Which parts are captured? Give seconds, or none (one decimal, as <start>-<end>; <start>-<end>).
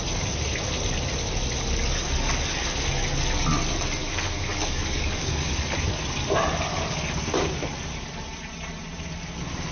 0.0-4.0; 5.5-9.7